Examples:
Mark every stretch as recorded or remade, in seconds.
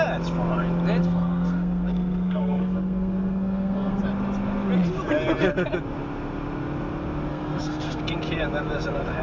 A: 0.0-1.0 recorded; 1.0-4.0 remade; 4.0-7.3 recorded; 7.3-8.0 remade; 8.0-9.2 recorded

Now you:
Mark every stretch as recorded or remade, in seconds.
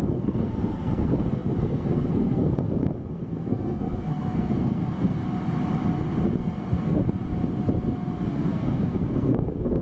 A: 0.0-5.2 remade; 5.2-6.3 recorded; 6.3-7.0 remade; 7.0-8.5 recorded; 8.5-9.8 remade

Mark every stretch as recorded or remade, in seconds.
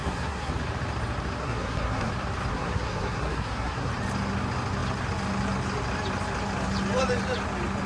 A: 0.0-0.5 remade; 0.5-1.4 recorded; 1.4-2.1 remade; 2.1-2.5 recorded; 2.5-3.9 remade; 3.9-7.9 recorded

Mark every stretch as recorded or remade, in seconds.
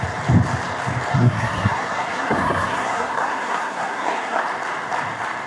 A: 0.0-1.1 recorded; 1.1-4.4 remade; 4.4-5.5 recorded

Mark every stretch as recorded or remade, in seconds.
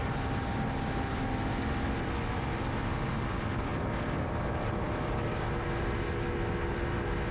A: 0.0-7.3 recorded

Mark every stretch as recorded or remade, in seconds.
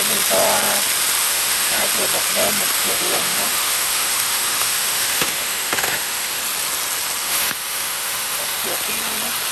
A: 0.0-1.2 recorded; 1.2-1.8 remade; 1.8-2.8 recorded; 2.8-6.4 remade; 6.4-7.2 recorded; 7.2-8.6 remade; 8.6-9.5 recorded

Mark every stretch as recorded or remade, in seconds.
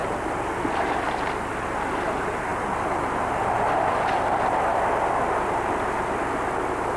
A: 0.0-7.0 recorded